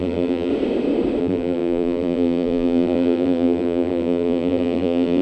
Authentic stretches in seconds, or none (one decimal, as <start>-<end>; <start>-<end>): 0.5-1.2